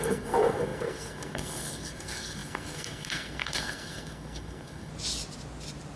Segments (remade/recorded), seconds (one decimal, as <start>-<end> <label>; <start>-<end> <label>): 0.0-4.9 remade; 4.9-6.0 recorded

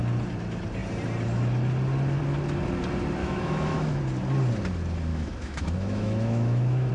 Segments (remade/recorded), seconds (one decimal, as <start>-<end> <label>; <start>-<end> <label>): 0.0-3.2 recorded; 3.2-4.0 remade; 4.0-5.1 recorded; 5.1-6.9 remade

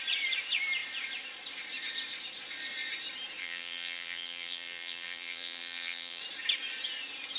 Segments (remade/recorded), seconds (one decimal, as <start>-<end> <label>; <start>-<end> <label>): 0.0-3.4 recorded; 3.4-6.2 remade; 6.2-7.4 recorded

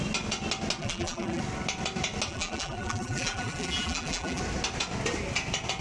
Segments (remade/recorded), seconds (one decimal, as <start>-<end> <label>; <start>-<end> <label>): 0.0-0.8 recorded; 0.8-1.4 remade; 1.4-2.3 recorded; 2.3-4.4 remade; 4.4-5.8 recorded

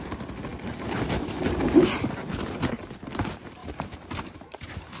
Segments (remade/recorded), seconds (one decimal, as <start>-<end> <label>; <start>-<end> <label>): 0.0-3.6 recorded; 3.6-5.0 remade